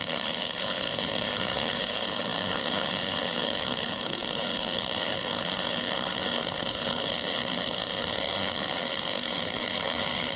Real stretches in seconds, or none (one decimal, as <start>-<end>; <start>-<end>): none